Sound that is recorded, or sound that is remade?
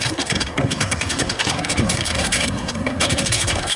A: remade